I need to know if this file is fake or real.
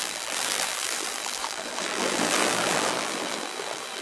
fake